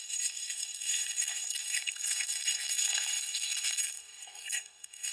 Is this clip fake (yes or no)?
yes